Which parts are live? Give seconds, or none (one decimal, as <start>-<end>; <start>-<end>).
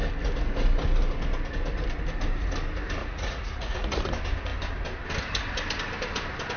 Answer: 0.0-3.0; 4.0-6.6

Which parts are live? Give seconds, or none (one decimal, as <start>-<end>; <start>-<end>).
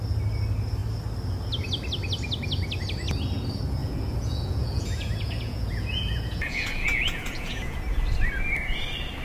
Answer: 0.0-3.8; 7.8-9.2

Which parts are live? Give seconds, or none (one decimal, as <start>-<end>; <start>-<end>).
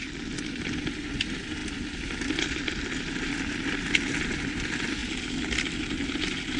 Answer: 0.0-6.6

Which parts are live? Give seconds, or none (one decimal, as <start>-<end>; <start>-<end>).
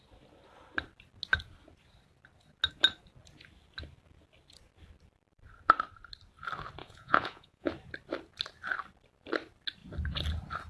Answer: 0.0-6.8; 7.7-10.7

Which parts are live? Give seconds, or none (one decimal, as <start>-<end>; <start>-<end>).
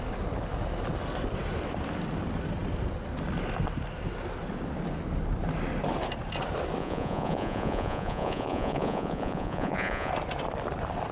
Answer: 0.0-6.8; 10.1-11.1